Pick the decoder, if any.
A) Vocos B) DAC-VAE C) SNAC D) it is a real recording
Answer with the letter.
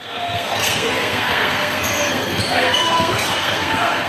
C